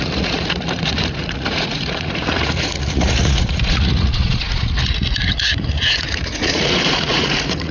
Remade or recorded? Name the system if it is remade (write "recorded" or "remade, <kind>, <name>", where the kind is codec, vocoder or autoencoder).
remade, vocoder, Vocos